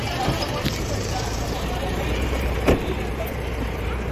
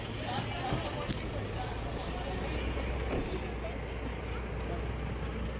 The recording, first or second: second